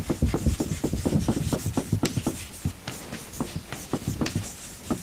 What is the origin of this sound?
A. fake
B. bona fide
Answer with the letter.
B